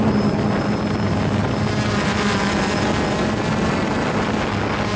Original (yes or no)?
yes